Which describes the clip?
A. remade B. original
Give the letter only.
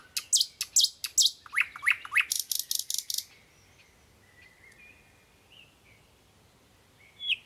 B